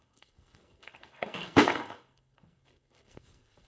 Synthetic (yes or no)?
yes